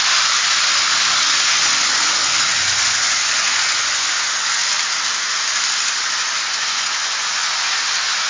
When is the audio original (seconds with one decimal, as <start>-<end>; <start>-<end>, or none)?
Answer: 0.0-1.2; 4.6-6.2; 7.4-8.3